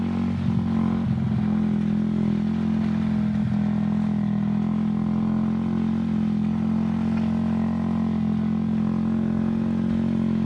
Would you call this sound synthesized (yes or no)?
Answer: no